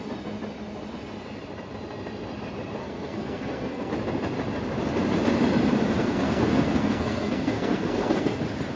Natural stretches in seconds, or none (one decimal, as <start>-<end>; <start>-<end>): 0.0-2.8; 3.9-6.0; 8.4-8.8